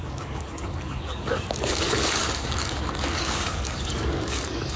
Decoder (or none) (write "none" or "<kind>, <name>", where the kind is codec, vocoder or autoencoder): codec, DAC